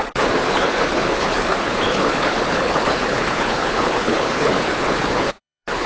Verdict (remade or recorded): remade